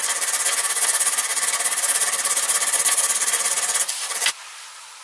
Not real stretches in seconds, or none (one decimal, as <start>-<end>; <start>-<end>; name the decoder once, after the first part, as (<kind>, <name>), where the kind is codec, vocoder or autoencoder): none